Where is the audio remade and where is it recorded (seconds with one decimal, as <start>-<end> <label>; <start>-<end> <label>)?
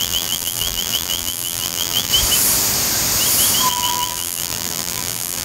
0.0-2.1 remade; 2.1-3.7 recorded; 3.7-5.4 remade